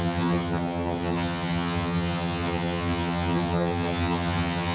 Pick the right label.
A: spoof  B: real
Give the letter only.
A